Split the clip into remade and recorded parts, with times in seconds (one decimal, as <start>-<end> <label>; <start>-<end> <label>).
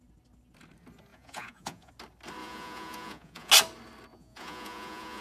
0.0-1.1 recorded; 1.1-1.9 remade; 1.9-2.4 recorded; 2.4-3.5 remade; 3.5-4.1 recorded; 4.1-5.2 remade